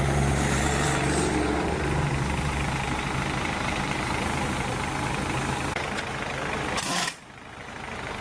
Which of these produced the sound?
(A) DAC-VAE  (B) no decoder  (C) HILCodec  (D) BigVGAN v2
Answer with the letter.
D